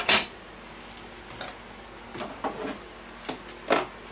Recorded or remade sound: recorded